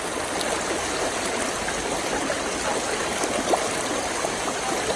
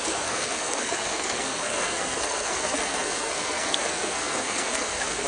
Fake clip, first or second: second